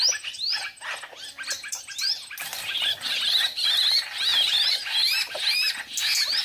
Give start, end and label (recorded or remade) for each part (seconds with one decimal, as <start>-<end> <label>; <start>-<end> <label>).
0.0-6.4 recorded